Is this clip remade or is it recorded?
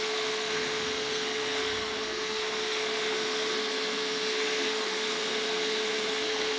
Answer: remade